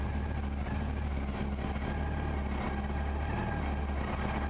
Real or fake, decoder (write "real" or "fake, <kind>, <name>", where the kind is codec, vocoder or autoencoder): real